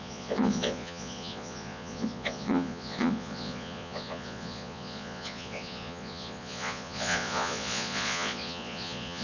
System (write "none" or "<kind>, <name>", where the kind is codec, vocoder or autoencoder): vocoder, Vocos